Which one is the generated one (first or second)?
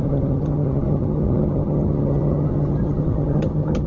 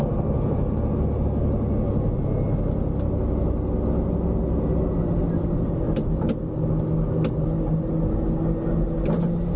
first